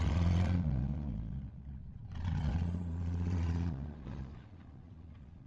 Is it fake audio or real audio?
fake